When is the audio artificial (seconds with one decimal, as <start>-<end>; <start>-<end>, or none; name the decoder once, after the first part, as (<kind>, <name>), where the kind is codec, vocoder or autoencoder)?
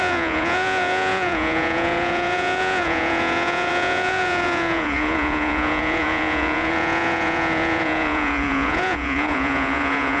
0.0-10.2 (vocoder, Vocos)